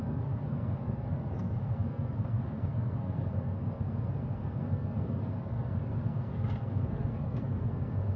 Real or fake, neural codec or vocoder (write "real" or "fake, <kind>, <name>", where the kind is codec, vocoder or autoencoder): fake, codec, SNAC